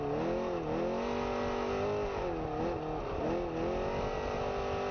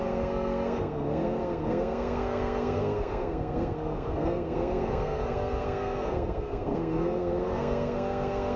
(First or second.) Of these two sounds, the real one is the first